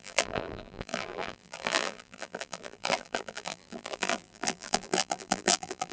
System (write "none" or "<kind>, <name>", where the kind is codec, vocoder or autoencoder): vocoder, BigVGAN v2